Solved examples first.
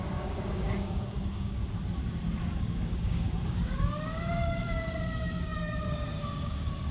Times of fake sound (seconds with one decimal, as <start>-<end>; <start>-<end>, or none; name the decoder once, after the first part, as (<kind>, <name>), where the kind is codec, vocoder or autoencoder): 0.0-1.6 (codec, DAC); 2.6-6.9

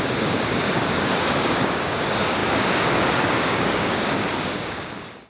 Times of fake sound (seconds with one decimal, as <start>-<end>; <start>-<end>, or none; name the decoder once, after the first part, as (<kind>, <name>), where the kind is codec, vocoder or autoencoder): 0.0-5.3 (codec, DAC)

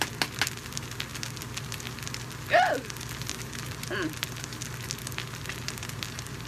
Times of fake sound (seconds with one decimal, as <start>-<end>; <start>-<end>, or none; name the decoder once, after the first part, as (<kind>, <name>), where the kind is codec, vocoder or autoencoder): none

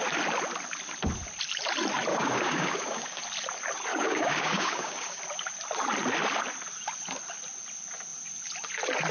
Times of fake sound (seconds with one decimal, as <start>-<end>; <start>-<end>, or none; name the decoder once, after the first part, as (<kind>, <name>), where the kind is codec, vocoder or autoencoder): 2.1-3.2 (codec, DAC); 3.9-5.2